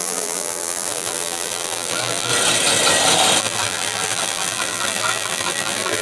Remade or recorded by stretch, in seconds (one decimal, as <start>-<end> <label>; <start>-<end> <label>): 0.0-2.3 remade; 2.3-3.4 recorded; 3.4-6.0 remade